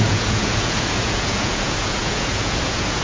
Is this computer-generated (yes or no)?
yes